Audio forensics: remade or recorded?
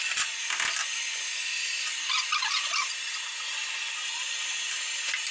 recorded